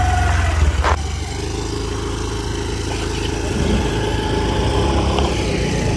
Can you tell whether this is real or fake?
real